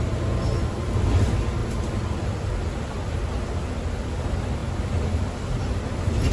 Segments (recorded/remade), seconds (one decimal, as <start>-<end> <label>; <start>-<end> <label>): 0.0-1.6 recorded; 1.6-3.5 remade; 3.5-6.3 recorded